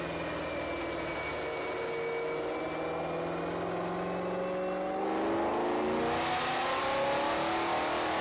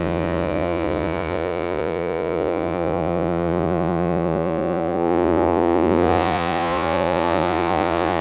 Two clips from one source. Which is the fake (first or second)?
second